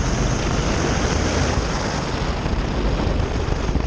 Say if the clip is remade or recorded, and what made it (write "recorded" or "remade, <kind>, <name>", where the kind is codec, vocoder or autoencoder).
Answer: recorded